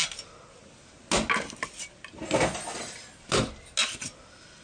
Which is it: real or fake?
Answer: real